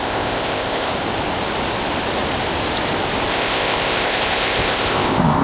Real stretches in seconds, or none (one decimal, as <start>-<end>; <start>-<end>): 0.9-3.3